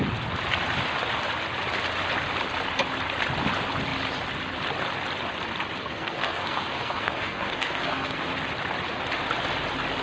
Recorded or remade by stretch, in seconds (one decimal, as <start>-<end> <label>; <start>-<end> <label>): 0.0-5.8 recorded; 5.8-8.3 remade; 8.3-10.0 recorded